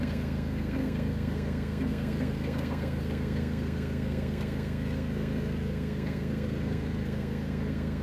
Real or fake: fake